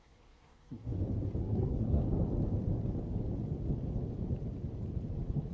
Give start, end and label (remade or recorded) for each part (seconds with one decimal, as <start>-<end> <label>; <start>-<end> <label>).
0.0-0.9 remade; 0.9-1.4 recorded; 1.4-2.0 remade; 2.0-5.5 recorded